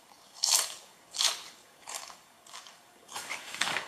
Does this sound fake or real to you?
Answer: fake